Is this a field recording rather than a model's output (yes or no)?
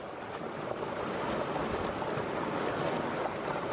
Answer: yes